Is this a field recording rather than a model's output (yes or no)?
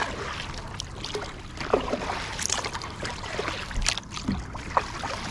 yes